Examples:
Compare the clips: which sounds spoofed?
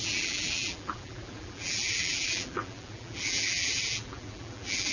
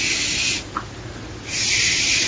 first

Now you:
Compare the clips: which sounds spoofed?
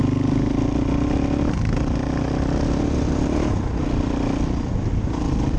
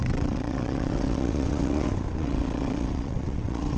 second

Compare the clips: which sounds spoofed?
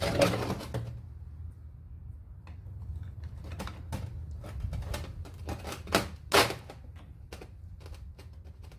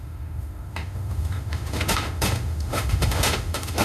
second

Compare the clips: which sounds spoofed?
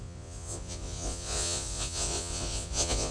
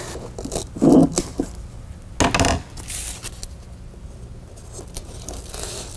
first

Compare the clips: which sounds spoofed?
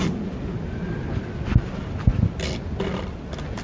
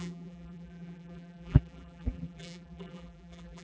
second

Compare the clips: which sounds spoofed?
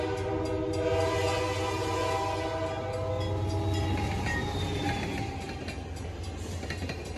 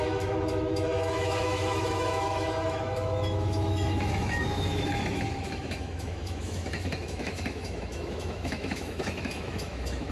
second